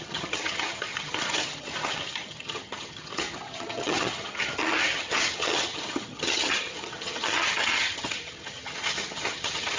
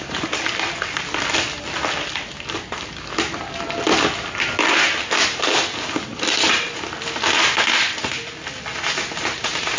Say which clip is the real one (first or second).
second